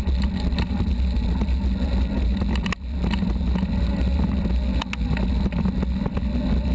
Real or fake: real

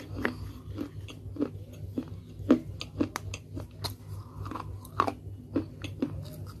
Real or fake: real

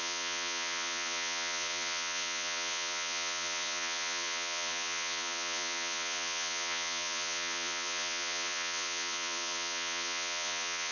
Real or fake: fake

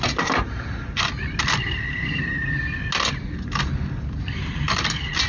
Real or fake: real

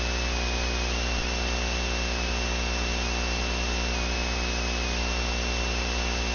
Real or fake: real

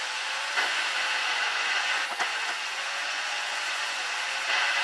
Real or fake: fake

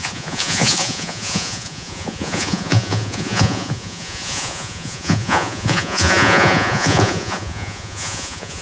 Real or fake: fake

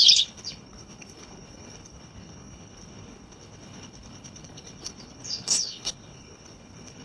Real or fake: fake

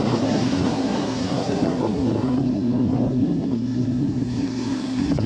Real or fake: fake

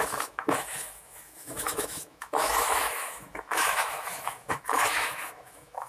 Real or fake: fake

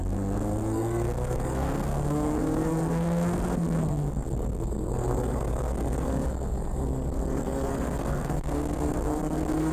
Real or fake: fake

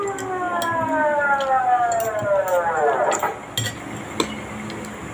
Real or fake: real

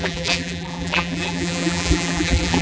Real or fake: fake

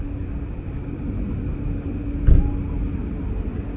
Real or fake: real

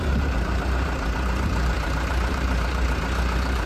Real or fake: fake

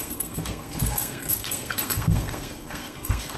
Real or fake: fake